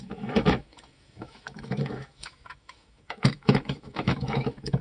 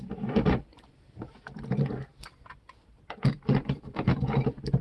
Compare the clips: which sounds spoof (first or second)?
first